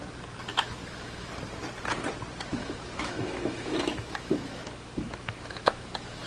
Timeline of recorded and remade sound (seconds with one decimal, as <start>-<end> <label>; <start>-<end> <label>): 0.0-0.5 recorded; 0.5-1.3 remade; 1.3-2.5 recorded; 2.5-6.3 remade

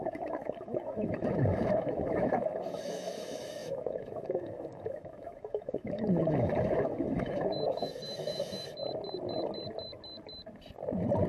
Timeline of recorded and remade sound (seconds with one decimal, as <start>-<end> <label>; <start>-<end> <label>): 0.0-8.8 remade; 8.8-11.3 recorded

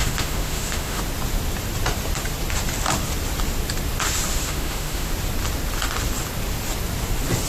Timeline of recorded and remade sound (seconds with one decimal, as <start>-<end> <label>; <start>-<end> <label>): 0.0-1.0 remade; 1.0-4.3 recorded; 4.3-5.1 remade; 5.1-7.5 recorded

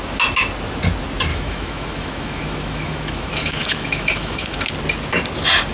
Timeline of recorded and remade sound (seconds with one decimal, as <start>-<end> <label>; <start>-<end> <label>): 0.0-1.3 recorded; 1.3-4.7 remade; 4.7-5.7 recorded

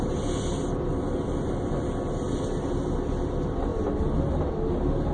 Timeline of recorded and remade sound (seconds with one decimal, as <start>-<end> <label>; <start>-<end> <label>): 0.0-5.1 recorded

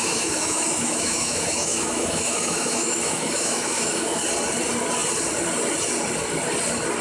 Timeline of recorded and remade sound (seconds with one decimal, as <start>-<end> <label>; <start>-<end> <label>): 0.0-4.2 remade; 4.2-7.0 recorded

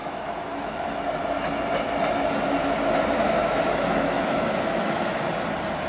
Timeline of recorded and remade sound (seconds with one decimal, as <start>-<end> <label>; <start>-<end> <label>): 0.0-1.0 remade; 1.0-3.4 recorded; 3.4-5.1 remade; 5.1-5.9 recorded